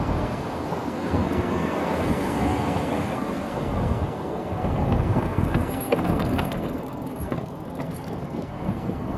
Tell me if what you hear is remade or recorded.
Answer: remade